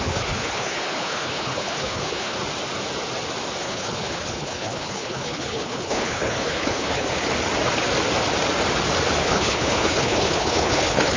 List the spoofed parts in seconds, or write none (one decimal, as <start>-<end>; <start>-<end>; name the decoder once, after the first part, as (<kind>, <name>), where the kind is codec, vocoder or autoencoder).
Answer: 0.0-2.4 (codec, HILCodec); 3.6-7.1; 9.2-11.2